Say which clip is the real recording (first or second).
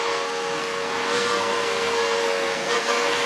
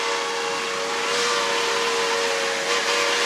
second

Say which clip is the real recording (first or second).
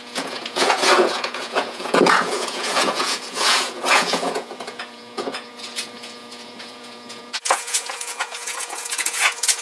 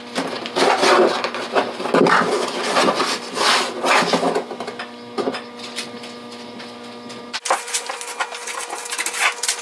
second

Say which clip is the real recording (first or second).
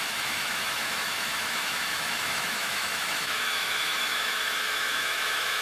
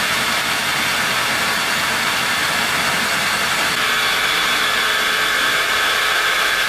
second